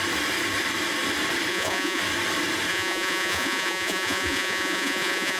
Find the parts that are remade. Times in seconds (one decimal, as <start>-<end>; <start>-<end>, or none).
1.5-2.0; 2.7-5.4